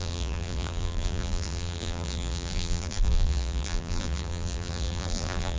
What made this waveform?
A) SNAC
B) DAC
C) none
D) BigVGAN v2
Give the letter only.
D